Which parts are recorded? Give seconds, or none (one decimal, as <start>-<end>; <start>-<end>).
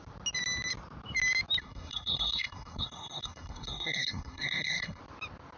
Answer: 0.0-1.6; 5.0-5.6